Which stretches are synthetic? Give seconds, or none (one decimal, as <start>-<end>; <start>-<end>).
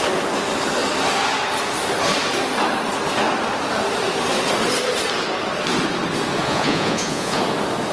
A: 6.4-7.4